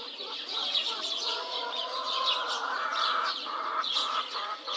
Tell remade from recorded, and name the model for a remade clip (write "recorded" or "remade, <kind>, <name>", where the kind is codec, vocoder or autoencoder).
remade, vocoder, Vocos